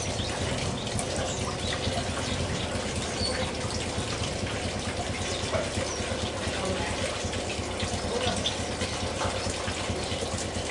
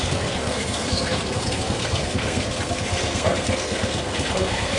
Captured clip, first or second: first